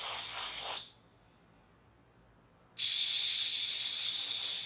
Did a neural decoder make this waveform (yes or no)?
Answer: no